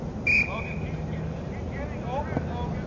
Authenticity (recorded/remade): recorded